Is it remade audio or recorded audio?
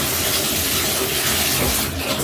recorded